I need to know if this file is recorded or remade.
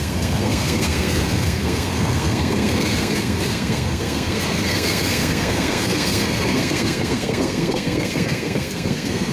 remade